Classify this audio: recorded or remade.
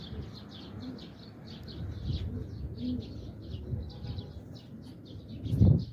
recorded